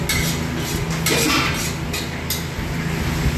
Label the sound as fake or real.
real